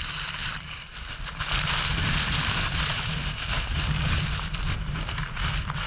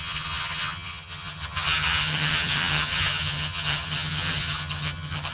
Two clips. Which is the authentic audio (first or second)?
first